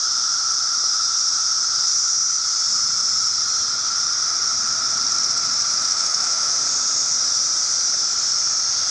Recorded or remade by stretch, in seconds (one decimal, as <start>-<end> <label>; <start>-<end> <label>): 0.0-5.7 recorded; 5.7-6.6 remade; 6.6-8.9 recorded